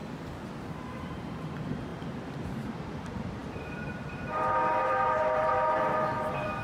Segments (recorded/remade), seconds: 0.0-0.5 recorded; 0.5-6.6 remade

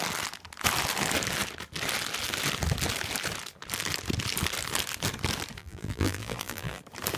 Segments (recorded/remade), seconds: 0.0-5.6 recorded; 5.6-6.8 remade; 6.8-7.2 recorded

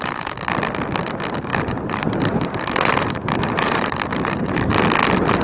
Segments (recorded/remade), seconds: 0.0-1.5 recorded; 1.5-4.7 remade; 4.7-5.4 recorded

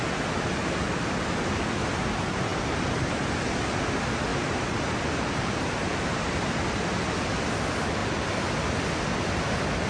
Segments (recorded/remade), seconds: 0.0-2.5 recorded; 2.5-3.7 remade; 3.7-4.3 recorded; 4.3-6.3 remade; 6.3-9.9 recorded

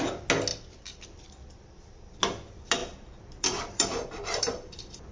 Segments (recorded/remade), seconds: 0.0-0.5 recorded; 0.5-2.2 remade; 2.2-2.8 recorded; 2.8-5.1 remade

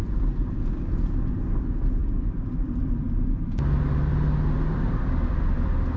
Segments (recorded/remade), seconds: 0.0-6.0 recorded